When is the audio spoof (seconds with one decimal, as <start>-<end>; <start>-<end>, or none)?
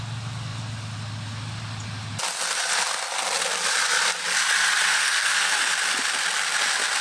4.9-5.5